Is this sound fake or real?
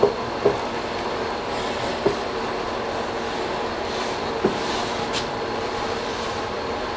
real